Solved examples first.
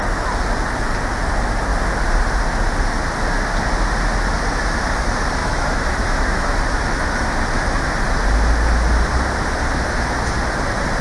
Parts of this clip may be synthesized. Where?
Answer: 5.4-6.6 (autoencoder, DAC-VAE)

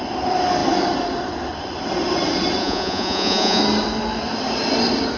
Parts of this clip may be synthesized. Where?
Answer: 2.6-3.6 (vocoder, Vocos)

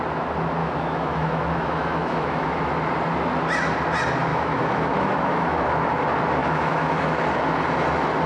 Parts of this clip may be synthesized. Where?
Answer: 0.6-2.6 (autoencoder, DAC-VAE); 4.3-5.6; 6.4-7.0